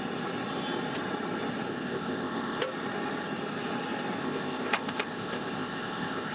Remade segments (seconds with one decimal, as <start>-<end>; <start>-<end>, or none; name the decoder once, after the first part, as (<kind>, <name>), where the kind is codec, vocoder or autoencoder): 1.7-2.6 (codec, ZipCodec); 4.2-6.3